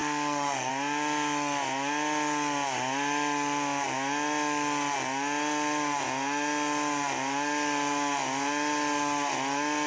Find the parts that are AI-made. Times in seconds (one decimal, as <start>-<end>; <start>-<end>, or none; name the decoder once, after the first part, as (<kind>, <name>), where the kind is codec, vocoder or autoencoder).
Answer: 0.0-0.7 (codec, SNAC)